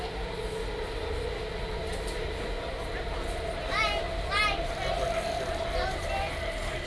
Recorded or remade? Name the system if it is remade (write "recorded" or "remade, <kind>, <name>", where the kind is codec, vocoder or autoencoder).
recorded